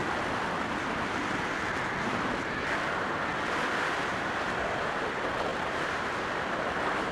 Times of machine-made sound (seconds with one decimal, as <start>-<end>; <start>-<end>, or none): 5.5-7.1